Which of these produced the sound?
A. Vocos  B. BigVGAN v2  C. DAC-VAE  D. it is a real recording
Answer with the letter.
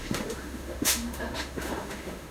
C